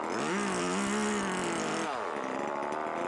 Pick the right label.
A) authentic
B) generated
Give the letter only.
A